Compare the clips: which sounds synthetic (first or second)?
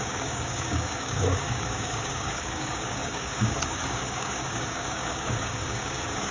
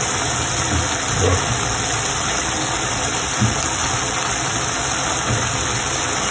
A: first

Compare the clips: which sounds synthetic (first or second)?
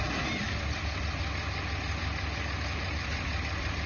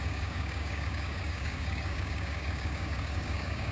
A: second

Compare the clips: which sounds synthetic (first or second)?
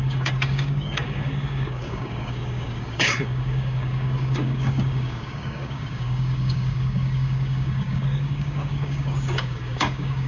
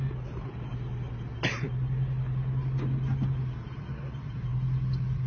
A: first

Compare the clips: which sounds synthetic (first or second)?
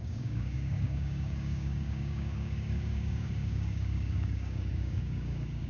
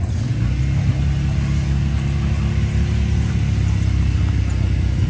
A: first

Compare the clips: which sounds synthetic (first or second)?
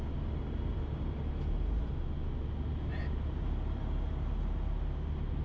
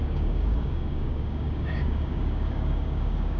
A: second